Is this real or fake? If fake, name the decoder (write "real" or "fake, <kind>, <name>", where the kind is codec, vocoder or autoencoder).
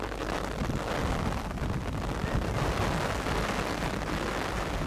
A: real